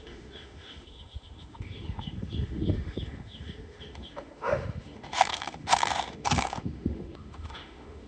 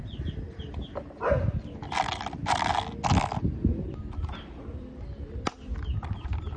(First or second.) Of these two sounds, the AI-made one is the first